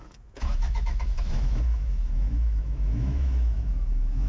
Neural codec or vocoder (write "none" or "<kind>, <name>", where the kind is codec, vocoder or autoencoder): autoencoder, DAC-VAE